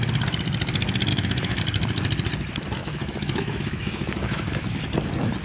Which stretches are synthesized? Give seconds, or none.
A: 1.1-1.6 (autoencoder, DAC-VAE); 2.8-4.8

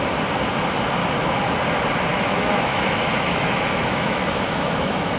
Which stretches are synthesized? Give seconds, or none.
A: 1.0-1.6 (autoencoder, DAC-VAE); 2.1-5.2